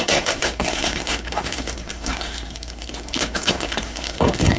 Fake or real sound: fake